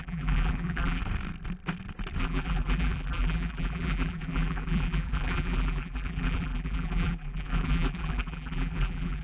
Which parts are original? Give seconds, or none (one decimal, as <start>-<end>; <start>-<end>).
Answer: 1.0-2.2